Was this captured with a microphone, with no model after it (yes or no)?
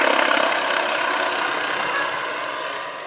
yes